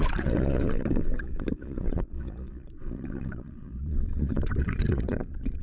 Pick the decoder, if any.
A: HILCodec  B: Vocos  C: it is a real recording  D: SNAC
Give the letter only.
B